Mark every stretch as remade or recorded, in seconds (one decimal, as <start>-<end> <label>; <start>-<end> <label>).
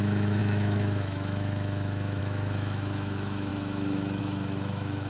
0.0-5.1 remade